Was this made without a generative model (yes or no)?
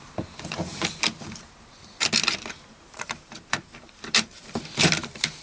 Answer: no